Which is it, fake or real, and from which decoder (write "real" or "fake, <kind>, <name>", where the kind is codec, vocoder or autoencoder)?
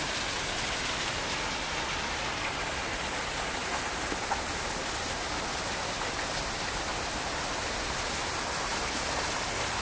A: real